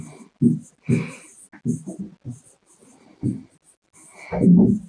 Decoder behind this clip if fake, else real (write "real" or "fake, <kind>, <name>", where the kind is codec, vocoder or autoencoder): real